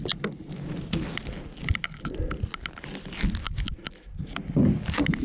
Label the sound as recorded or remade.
recorded